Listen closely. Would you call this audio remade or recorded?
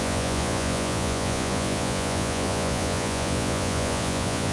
remade